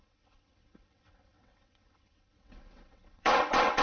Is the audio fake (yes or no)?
yes